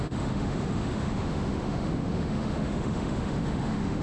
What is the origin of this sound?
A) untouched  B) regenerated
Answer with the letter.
B